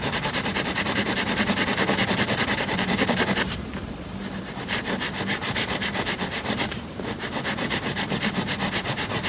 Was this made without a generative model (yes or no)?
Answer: no